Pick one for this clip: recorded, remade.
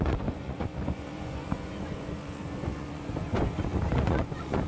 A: remade